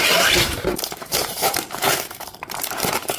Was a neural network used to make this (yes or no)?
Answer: yes